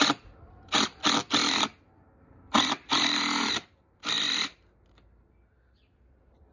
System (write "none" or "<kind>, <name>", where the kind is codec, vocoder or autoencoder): none